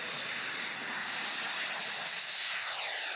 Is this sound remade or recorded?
remade